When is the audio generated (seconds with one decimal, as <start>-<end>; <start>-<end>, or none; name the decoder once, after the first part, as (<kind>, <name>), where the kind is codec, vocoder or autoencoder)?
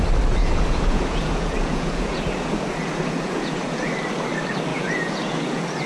0.4-3.9 (vocoder, Vocos); 4.7-5.9